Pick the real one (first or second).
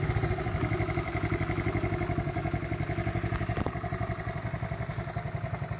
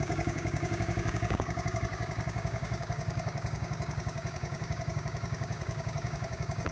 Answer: first